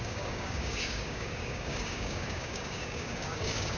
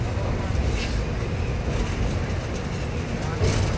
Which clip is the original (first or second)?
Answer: second